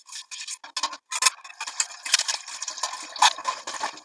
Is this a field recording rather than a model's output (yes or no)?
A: yes